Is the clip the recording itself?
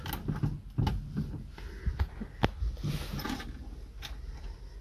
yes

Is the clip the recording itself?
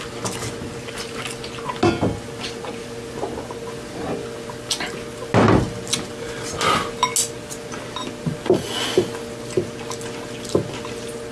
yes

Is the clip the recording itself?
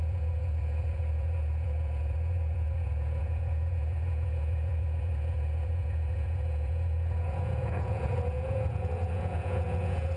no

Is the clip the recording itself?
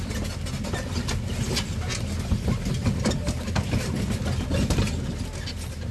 yes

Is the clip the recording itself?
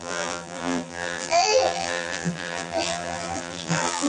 no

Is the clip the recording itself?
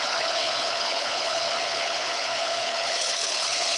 no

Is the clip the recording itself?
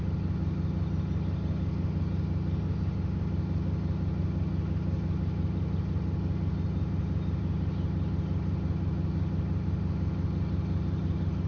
yes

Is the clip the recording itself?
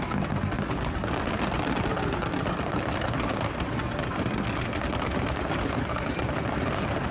yes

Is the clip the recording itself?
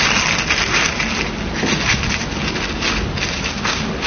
yes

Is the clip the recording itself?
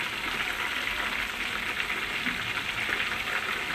yes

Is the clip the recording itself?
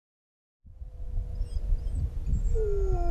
yes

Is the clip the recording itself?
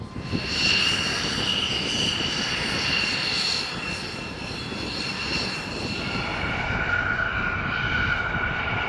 yes